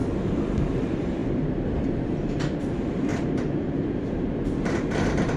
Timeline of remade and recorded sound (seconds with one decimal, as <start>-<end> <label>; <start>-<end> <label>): 0.0-0.7 recorded; 0.7-3.1 remade; 3.1-3.8 recorded; 3.8-5.4 remade